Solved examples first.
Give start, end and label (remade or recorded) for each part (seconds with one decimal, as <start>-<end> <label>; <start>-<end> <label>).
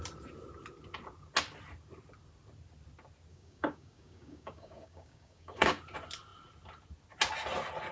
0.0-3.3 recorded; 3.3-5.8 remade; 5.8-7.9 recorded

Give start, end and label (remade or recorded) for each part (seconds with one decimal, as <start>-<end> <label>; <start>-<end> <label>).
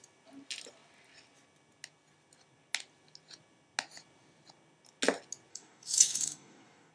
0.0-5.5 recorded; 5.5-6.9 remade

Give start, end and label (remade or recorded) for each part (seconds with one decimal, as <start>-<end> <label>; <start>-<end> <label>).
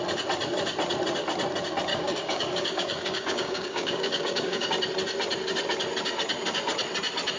0.0-1.9 recorded; 1.9-4.7 remade; 4.7-7.4 recorded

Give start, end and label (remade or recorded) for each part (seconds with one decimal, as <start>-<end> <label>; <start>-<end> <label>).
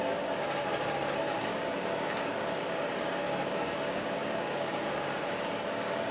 0.0-0.6 remade; 0.6-1.2 recorded; 1.2-6.1 remade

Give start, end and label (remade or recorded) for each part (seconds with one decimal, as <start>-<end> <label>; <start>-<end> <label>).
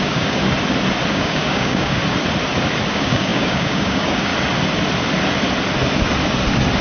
0.0-0.4 remade; 0.4-1.1 recorded; 1.1-2.0 remade; 2.0-2.9 recorded; 2.9-4.3 remade; 4.3-6.8 recorded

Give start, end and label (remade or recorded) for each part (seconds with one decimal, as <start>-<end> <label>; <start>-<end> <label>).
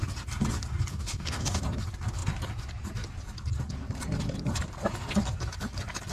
0.0-0.9 recorded; 0.9-1.6 remade; 1.6-6.1 recorded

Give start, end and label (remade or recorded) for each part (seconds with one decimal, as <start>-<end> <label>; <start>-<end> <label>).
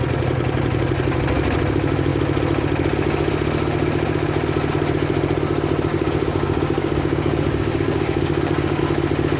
0.0-5.9 recorded; 5.9-8.8 remade; 8.8-9.4 recorded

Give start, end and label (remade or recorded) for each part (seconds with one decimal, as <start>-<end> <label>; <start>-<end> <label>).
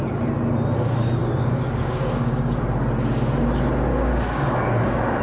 0.0-1.2 recorded; 1.2-2.6 remade; 2.6-3.9 recorded; 3.9-5.2 remade